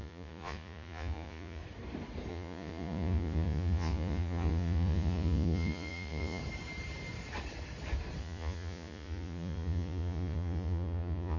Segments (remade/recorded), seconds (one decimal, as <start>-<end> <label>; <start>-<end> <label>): 0.0-1.6 remade; 1.6-2.3 recorded; 2.3-6.4 remade; 6.4-8.2 recorded; 8.2-11.4 remade